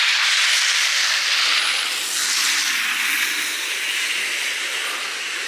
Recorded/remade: recorded